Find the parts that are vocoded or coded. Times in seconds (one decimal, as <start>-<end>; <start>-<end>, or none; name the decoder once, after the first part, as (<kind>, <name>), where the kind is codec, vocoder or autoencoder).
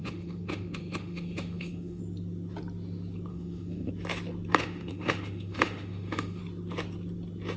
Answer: 0.0-2.0 (autoencoder, DAC-VAE); 3.3-3.9; 4.6-6.4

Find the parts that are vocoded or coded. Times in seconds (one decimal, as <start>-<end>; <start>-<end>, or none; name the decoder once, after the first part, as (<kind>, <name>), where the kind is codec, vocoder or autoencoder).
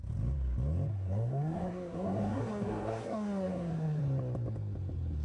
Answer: 0.9-4.0 (codec, SNAC)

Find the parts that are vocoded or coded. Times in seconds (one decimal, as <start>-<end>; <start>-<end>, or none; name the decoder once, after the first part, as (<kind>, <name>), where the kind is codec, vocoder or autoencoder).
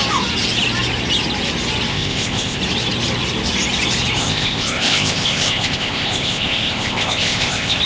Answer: 1.9-2.6 (codec, ZipCodec); 4.2-7.8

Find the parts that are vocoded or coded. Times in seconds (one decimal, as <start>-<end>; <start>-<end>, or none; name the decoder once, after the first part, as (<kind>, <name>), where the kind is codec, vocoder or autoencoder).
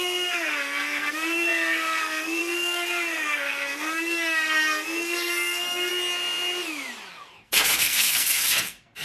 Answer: 0.0-5.9 (codec, SNAC); 7.1-9.0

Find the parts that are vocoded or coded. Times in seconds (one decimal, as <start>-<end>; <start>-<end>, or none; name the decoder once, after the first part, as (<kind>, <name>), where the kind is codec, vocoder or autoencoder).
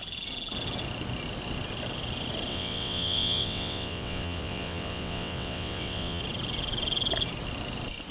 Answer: 2.5-6.2 (vocoder, WaveNeXt)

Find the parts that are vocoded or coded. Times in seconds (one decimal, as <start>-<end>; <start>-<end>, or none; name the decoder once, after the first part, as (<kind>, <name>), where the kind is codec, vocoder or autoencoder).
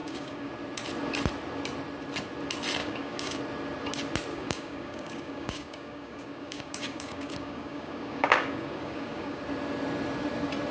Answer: 0.0-0.5 (codec, DAC); 2.8-3.4; 4.3-9.4